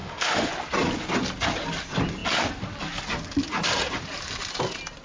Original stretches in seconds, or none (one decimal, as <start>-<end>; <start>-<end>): 0.5-5.0